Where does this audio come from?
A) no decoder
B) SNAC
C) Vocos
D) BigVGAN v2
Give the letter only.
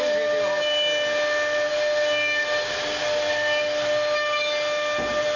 A